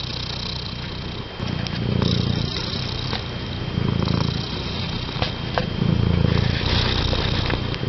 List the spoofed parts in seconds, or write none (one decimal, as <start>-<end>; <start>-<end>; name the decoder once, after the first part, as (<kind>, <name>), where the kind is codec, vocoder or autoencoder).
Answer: none